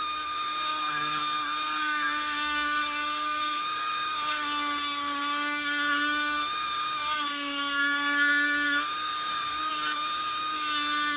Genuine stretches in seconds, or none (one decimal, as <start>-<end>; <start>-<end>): none